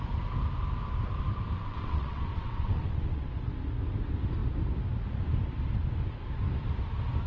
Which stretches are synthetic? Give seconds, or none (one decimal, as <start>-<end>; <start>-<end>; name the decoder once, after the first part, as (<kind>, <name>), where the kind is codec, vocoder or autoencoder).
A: 1.6-3.3 (vocoder, WaveNeXt)